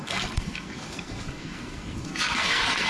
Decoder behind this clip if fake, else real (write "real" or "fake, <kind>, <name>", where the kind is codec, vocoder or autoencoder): fake, codec, SNAC